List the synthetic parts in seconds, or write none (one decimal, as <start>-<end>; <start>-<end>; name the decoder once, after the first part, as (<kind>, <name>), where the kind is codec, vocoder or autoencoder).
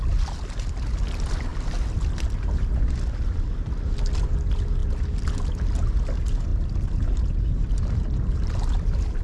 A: none